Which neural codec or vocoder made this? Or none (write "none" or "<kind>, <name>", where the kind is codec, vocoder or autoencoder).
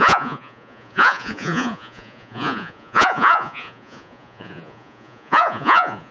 vocoder, Vocos